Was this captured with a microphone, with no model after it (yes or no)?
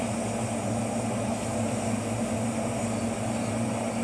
yes